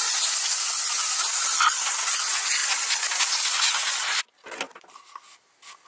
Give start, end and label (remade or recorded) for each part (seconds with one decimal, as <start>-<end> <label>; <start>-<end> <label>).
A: 0.0-5.9 recorded